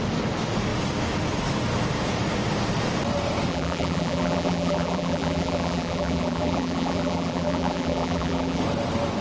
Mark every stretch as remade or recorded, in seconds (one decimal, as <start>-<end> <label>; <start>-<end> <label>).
0.0-3.5 recorded; 3.5-8.6 remade; 8.6-9.2 recorded